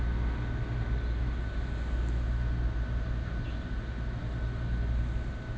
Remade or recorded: recorded